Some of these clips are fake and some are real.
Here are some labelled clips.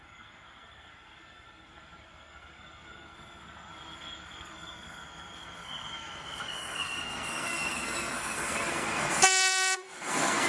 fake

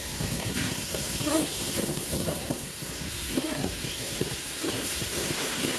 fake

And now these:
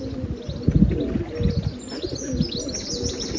real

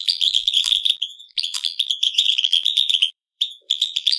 fake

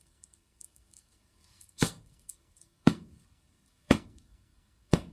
fake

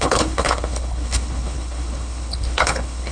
fake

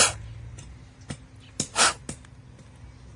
real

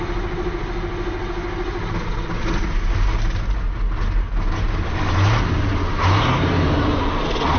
real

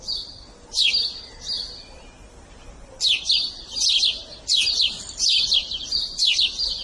real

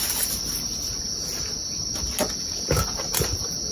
real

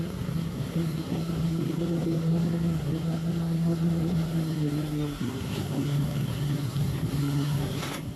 fake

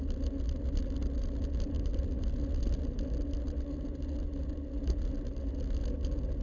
real